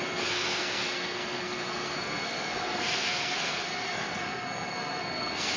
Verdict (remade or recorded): remade